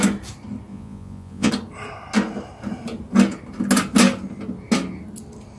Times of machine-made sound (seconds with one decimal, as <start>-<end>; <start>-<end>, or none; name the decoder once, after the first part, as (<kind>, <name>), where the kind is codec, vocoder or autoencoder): 0.7-1.5 (vocoder, Vocos)